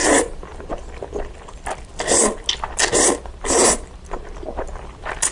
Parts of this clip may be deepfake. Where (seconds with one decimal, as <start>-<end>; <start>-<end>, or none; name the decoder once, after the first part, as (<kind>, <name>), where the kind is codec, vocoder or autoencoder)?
none